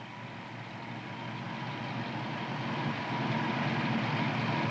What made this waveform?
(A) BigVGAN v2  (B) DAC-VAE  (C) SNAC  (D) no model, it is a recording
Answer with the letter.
D